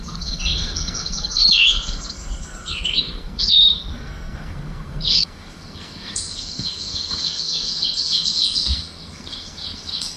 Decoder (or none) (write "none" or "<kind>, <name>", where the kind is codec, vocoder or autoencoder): codec, SNAC